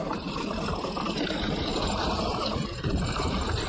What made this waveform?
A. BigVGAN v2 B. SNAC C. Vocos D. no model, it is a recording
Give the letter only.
A